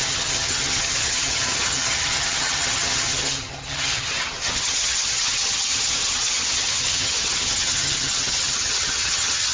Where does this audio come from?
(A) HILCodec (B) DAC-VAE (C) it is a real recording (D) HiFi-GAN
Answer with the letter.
D